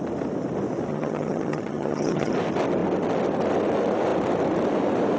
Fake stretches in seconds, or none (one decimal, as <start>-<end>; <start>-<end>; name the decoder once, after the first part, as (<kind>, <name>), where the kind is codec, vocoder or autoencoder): 0.9-2.3 (vocoder, HiFi-GAN)